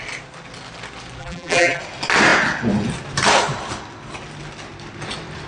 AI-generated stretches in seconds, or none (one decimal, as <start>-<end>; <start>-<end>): 1.2-1.8